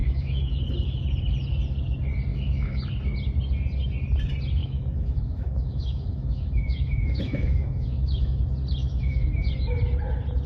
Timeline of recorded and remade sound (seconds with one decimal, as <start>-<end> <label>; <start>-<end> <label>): 0.0-0.6 remade; 0.6-2.3 recorded; 2.3-2.8 remade; 2.8-4.6 recorded; 4.6-8.4 remade; 8.4-8.8 recorded; 8.8-9.5 remade; 9.5-10.5 recorded